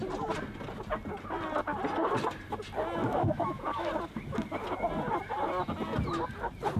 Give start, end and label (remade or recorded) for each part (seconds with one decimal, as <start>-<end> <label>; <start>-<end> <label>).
0.0-3.0 recorded; 3.0-3.9 remade; 3.9-6.8 recorded